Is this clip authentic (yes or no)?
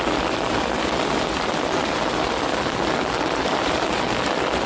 yes